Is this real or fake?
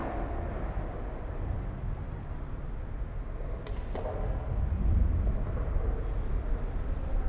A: real